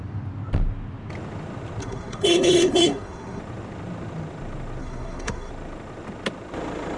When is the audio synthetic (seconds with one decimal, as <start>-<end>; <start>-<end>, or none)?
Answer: 1.8-3.4; 4.8-5.5